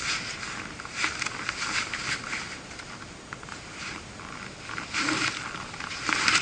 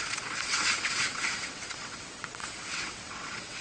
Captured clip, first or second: first